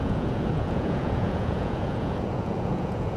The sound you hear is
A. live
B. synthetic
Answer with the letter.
B